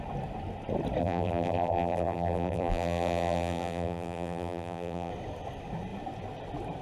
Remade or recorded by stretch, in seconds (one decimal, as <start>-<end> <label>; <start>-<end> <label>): 0.0-1.0 recorded; 1.0-5.1 remade; 5.1-6.8 recorded